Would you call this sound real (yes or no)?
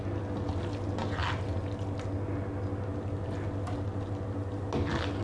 yes